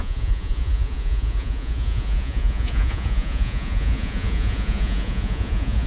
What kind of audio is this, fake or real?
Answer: fake